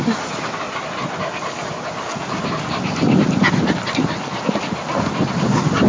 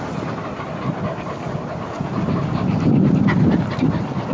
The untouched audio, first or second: first